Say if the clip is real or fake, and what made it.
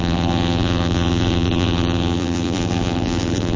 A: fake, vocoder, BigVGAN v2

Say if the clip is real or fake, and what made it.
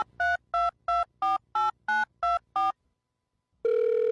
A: real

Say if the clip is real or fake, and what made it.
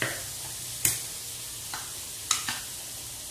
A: real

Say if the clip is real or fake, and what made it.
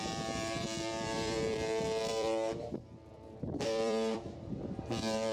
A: fake, vocoder, BigVGAN v2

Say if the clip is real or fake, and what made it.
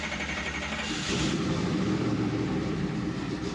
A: fake, vocoder, BigVGAN v2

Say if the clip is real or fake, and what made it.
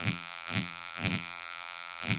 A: fake, vocoder, BigVGAN v2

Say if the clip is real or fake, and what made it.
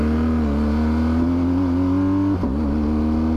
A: real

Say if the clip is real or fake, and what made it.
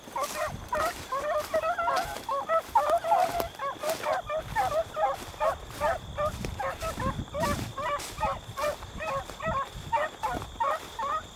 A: real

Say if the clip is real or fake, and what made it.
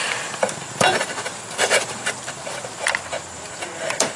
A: fake, vocoder, BigVGAN v2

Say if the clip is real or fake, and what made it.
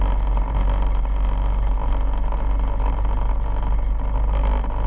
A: real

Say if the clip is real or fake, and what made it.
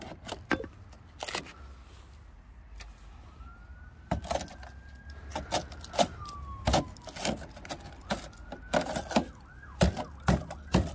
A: real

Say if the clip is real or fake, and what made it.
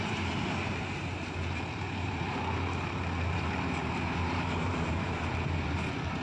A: fake, vocoder, BigVGAN v2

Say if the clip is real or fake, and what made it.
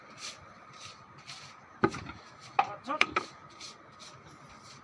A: fake, vocoder, BigVGAN v2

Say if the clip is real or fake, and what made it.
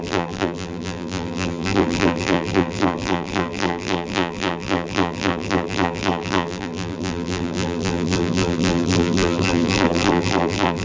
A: fake, vocoder, BigVGAN v2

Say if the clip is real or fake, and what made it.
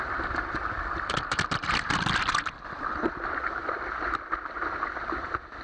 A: fake, vocoder, BigVGAN v2